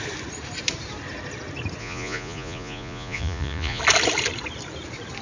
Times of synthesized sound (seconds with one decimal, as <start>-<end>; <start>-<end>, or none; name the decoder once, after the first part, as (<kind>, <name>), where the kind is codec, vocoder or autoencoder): 1.8-3.8 (vocoder, Vocos)

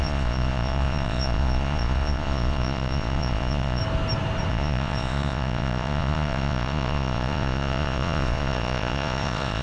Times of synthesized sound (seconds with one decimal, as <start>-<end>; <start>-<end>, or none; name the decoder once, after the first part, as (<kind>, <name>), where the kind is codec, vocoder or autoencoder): 0.0-3.8 (vocoder, Vocos); 4.5-9.6

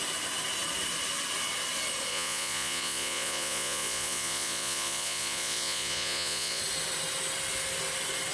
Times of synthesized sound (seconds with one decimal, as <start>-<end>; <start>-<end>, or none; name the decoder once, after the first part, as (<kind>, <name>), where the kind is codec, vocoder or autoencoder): 2.1-6.6 (vocoder, Vocos)

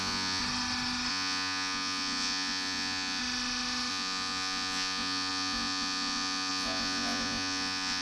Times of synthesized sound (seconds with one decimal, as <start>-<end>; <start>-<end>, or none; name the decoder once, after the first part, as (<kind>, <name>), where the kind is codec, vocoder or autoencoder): 0.0-0.4 (vocoder, Vocos); 1.1-3.2; 3.9-8.0

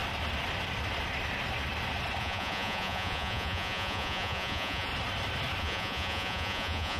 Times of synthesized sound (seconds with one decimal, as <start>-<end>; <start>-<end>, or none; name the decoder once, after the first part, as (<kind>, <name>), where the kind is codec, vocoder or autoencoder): 2.2-4.9 (vocoder, Vocos); 5.6-7.0

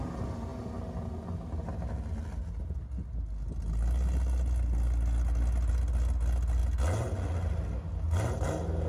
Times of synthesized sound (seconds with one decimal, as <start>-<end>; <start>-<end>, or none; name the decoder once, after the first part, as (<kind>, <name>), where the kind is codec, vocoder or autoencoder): none

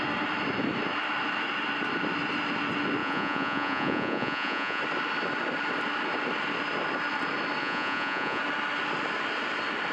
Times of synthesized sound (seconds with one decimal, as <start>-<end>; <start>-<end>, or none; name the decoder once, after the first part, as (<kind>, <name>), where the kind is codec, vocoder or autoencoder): 3.0-4.8 (vocoder, Vocos); 7.6-8.4